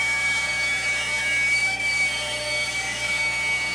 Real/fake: fake